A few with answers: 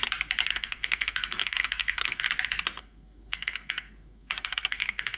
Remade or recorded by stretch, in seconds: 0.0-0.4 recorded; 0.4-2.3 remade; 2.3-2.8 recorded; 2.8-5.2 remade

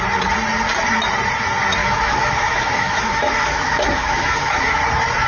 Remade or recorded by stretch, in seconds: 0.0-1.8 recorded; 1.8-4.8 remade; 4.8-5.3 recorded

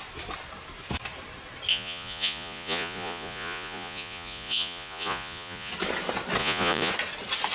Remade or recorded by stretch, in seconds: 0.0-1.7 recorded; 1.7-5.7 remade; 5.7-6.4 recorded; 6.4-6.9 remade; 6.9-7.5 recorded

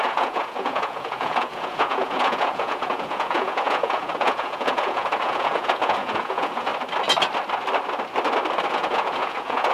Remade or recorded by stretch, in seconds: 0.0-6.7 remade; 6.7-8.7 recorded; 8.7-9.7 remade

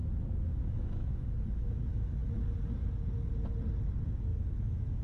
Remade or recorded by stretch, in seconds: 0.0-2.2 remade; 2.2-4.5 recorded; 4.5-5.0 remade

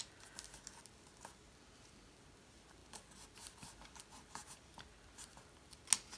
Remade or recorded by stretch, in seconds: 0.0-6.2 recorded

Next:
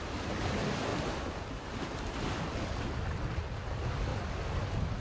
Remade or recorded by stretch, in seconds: 0.0-5.0 recorded

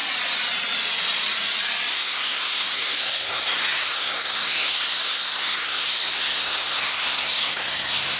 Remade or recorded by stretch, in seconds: 0.0-1.9 recorded; 1.9-8.2 remade